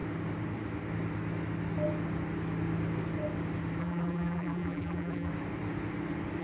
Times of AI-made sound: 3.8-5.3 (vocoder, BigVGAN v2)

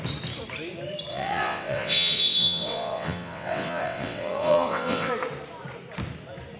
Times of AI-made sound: 1.1-5.1 (vocoder, WaveNeXt)

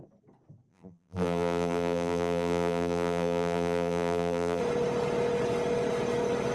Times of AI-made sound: 0.7-4.6 (vocoder, BigVGAN v2)

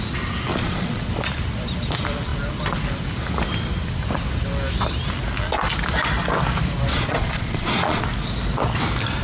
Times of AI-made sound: 0.5-1.1 (vocoder, Vocos); 6.9-8.0

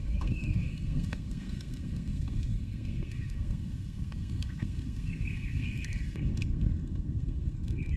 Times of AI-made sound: 0.0-8.0 (codec, SNAC)

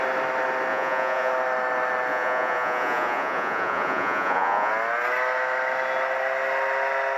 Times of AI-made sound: 0.7-1.3 (vocoder, Vocos); 2.1-4.7

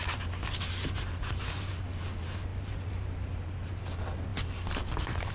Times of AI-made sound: 2.5-3.8 (vocoder, BigVGAN v2)